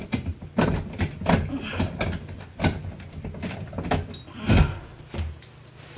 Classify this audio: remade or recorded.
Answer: recorded